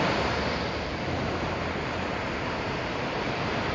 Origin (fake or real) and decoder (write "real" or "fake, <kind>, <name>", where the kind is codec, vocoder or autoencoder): fake, vocoder, BigVGAN v2